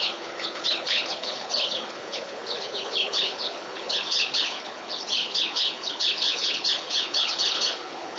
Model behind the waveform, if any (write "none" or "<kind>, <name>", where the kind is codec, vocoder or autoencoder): codec, HILCodec